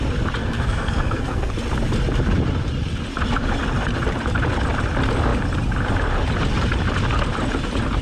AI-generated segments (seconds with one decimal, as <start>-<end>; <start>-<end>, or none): 0.4-1.5